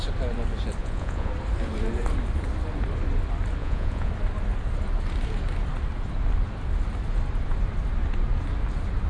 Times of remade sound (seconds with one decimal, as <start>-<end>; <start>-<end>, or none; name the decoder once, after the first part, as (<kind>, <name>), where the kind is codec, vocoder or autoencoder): 0.8-1.3 (vocoder, Vocos); 3.6-4.1